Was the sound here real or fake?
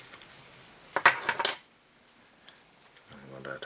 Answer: real